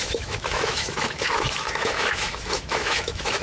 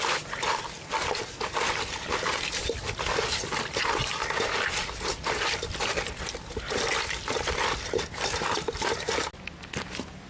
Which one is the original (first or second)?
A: second